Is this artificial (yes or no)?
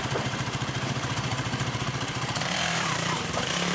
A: yes